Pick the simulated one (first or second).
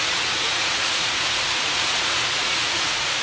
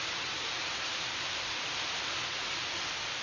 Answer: first